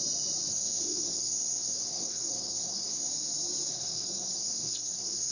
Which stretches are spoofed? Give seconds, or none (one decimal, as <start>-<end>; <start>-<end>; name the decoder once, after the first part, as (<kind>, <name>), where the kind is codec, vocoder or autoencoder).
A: 0.5-3.1 (codec, SNAC); 3.7-5.3